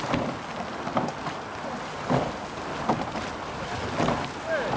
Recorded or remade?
recorded